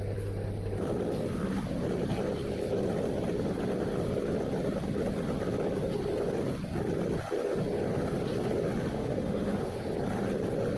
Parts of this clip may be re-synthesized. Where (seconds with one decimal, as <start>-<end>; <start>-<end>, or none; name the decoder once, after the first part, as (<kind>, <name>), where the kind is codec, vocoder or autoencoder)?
8.9-9.8 (autoencoder, DAC-VAE)